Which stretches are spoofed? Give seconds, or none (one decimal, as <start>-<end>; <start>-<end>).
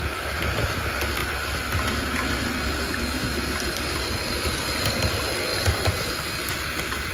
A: 5.5-7.1